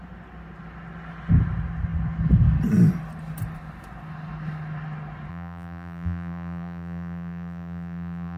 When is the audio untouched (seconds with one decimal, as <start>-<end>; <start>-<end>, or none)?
0.0-5.3